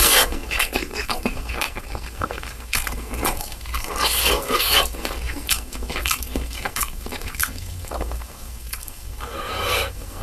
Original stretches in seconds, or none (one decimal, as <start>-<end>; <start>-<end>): none